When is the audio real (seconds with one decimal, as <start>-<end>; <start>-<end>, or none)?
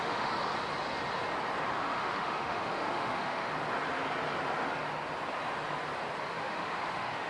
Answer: 0.4-1.7; 3.5-6.3